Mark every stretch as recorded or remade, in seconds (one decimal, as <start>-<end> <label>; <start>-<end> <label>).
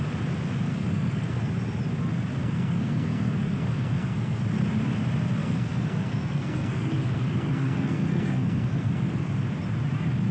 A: 0.0-0.7 recorded; 0.7-1.5 remade; 1.5-2.4 recorded; 2.4-4.4 remade; 4.4-5.4 recorded; 5.4-9.3 remade; 9.3-10.3 recorded